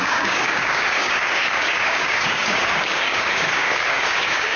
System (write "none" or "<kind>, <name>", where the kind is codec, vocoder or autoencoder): codec, DAC